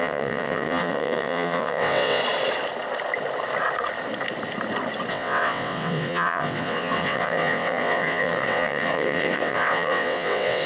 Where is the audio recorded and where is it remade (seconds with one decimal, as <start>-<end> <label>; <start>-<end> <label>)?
0.0-2.2 remade; 2.2-5.1 recorded; 5.1-10.7 remade